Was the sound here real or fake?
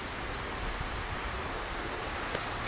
real